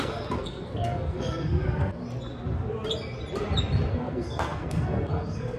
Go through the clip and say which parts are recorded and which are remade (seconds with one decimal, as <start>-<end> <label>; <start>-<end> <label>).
0.0-2.0 remade; 2.0-3.9 recorded; 3.9-5.6 remade